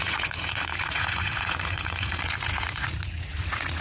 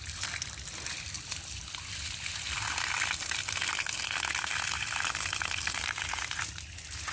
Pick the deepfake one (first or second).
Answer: first